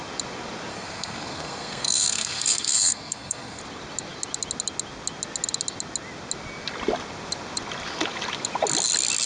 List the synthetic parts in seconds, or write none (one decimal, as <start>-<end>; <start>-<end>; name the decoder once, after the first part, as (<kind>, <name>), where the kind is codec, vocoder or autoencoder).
0.7-3.6 (codec, SNAC)